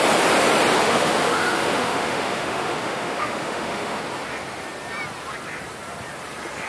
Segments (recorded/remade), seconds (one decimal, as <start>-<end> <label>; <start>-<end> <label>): 0.0-0.8 recorded; 0.8-4.0 remade; 4.0-6.7 recorded